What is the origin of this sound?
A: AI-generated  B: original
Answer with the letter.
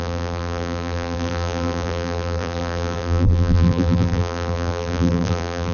A